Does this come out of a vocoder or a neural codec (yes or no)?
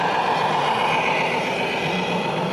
no